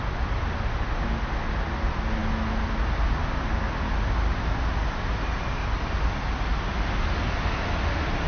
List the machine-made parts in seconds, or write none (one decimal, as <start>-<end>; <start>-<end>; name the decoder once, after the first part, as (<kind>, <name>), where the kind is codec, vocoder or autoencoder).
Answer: none